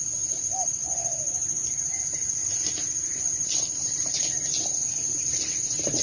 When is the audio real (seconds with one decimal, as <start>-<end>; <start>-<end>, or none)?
0.0-6.0